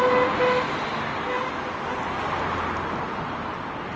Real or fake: real